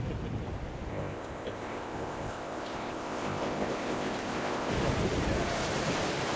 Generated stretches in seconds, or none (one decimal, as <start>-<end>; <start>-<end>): 0.9-4.7